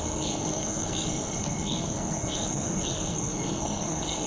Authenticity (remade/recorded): remade